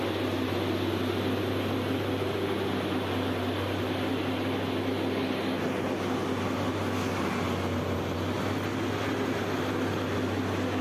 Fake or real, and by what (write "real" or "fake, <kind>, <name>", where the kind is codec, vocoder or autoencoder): real